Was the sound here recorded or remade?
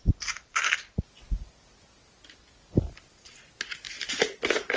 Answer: recorded